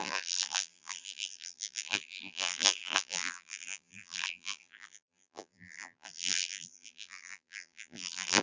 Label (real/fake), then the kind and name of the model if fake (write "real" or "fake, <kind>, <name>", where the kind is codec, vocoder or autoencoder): fake, vocoder, BigVGAN v2